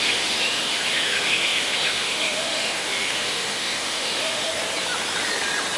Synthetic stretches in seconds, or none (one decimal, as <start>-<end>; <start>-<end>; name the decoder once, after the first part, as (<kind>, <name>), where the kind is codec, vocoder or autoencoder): 0.0-4.5 (autoencoder, DAC-VAE)